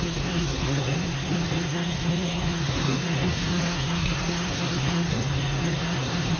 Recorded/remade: remade